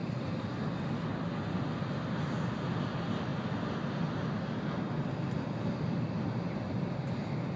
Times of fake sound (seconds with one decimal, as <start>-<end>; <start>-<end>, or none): none